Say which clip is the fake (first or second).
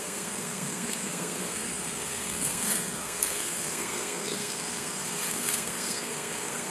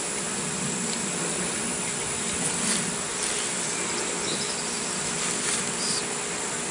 first